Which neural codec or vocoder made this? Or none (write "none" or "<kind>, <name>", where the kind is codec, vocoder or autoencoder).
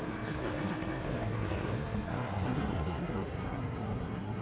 codec, SNAC